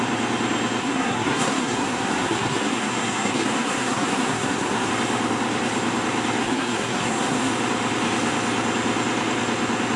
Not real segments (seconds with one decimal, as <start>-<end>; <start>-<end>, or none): 0.8-4.9; 6.4-7.5